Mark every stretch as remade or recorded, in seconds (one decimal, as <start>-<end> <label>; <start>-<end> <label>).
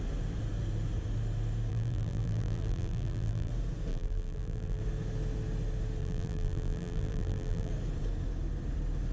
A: 0.0-1.7 recorded; 1.7-3.5 remade; 3.5-3.9 recorded; 3.9-4.8 remade; 4.8-6.0 recorded; 6.0-7.7 remade; 7.7-9.1 recorded